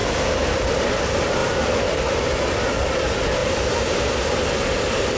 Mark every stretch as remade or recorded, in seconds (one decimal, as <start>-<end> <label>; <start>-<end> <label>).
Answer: 0.0-0.9 remade; 0.9-1.4 recorded; 1.4-2.2 remade; 2.2-3.4 recorded; 3.4-4.3 remade; 4.3-5.2 recorded